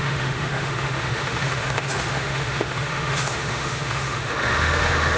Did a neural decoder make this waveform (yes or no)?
yes